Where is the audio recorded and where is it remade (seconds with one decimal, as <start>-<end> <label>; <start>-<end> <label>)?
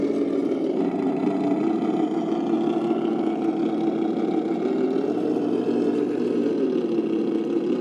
0.0-0.4 recorded; 0.4-1.2 remade; 1.2-7.8 recorded